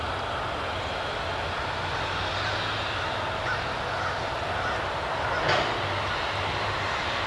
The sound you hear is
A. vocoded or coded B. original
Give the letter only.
B